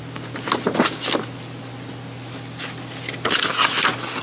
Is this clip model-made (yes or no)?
no